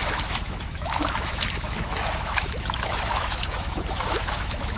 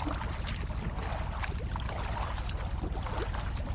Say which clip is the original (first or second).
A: second